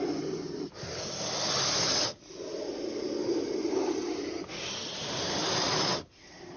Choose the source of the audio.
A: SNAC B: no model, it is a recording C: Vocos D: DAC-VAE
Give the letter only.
B